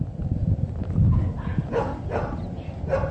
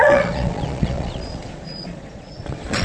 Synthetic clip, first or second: second